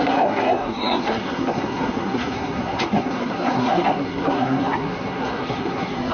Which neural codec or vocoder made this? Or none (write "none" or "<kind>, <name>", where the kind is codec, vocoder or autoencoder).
codec, SNAC